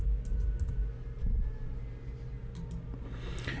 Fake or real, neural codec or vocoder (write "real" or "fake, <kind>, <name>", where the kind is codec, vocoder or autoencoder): real